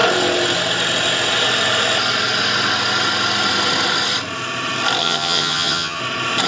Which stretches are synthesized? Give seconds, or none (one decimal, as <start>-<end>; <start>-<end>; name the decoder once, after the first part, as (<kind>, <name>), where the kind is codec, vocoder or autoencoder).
5.0-6.0 (vocoder, HiFi-GAN)